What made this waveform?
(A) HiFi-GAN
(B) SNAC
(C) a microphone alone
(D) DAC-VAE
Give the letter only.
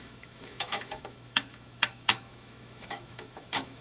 D